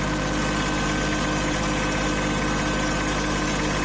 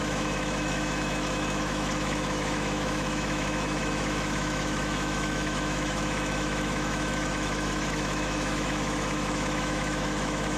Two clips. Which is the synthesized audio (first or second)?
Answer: second